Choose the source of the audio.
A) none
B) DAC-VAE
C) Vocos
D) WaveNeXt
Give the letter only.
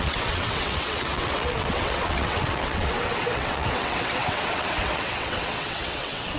D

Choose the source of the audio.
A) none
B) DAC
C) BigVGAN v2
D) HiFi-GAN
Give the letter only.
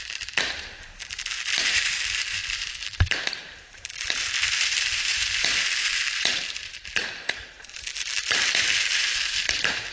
C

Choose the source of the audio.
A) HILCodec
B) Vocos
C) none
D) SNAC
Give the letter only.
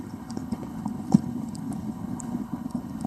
A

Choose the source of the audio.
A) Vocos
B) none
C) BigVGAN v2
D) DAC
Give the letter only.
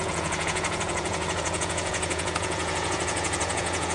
A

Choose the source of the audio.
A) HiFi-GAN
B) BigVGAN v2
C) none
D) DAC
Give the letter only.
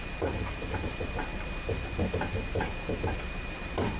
B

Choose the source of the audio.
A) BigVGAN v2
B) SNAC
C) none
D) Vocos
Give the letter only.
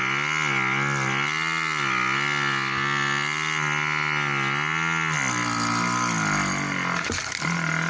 C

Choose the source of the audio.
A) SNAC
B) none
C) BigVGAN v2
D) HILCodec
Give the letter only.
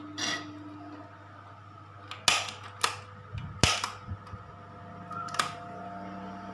B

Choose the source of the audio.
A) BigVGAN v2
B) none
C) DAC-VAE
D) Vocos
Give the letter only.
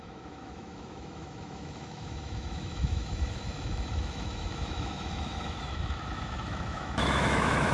C